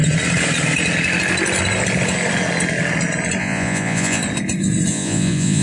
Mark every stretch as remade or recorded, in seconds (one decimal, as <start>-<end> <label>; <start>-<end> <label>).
0.0-3.4 recorded; 3.4-4.2 remade; 4.2-4.9 recorded; 4.9-5.6 remade